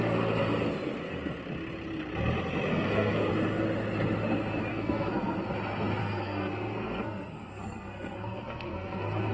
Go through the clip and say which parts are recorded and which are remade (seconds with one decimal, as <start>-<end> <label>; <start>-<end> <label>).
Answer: 0.0-2.7 recorded; 2.7-3.3 remade; 3.3-4.7 recorded; 4.7-5.4 remade; 5.4-6.0 recorded; 6.0-9.3 remade

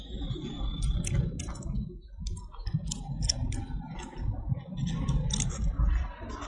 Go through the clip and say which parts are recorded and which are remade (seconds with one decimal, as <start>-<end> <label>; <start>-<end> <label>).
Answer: 0.0-6.5 recorded

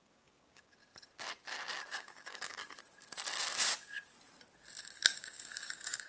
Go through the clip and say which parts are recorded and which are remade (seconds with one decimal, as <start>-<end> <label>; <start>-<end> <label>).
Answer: 0.0-0.8 remade; 0.8-1.9 recorded; 1.9-2.6 remade; 2.6-4.8 recorded; 4.8-6.1 remade

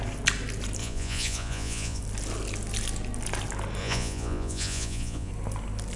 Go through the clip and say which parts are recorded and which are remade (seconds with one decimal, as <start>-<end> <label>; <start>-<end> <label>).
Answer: 0.0-0.8 recorded; 0.8-2.0 remade; 2.0-3.8 recorded; 3.8-5.3 remade; 5.3-6.0 recorded